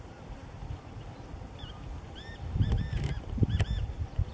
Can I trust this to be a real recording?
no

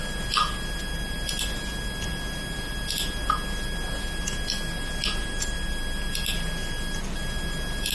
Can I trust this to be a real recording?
yes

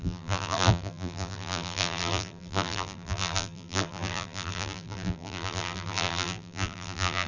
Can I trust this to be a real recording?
no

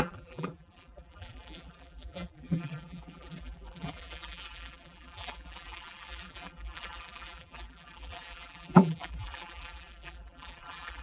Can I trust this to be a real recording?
no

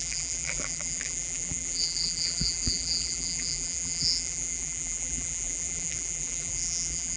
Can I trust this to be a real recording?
no